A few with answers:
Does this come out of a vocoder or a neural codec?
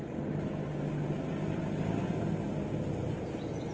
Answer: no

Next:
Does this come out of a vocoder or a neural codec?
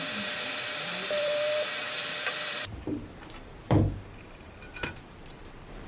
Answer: yes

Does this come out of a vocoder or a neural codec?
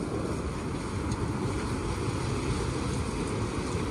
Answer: no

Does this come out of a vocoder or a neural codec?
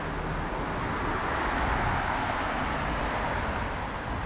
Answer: no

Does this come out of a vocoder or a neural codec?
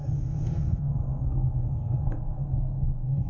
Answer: yes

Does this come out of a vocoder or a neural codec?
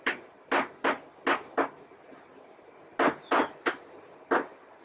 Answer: no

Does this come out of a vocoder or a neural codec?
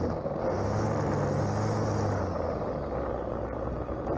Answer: no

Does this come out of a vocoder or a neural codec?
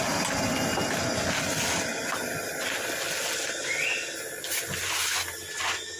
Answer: no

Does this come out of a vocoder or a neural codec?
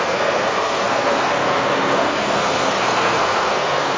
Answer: yes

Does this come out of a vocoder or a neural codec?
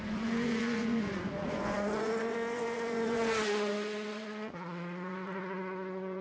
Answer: yes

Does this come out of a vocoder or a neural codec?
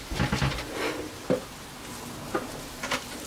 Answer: no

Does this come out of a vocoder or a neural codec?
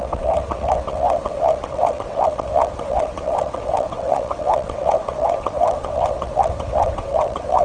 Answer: yes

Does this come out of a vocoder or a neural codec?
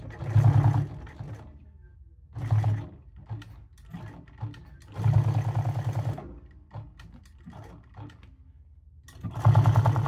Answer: no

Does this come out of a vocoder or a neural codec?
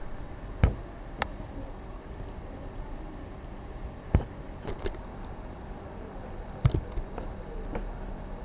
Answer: no